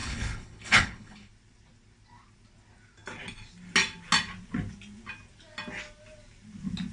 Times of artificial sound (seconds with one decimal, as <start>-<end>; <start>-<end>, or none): 0.0-1.3